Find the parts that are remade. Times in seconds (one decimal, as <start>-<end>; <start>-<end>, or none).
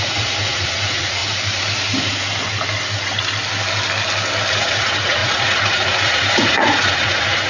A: 0.0-1.2; 4.5-7.5